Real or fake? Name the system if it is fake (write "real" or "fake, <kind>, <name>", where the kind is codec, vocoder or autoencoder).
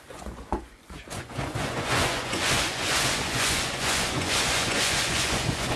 fake, vocoder, Vocos